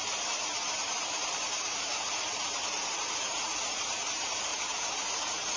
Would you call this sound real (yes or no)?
no